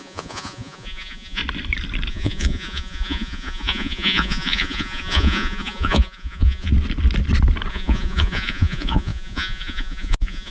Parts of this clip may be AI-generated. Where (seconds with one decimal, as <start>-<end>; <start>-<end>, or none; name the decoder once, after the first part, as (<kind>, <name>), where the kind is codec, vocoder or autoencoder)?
0.0-1.4 (vocoder, Vocos); 2.1-6.7; 7.7-10.5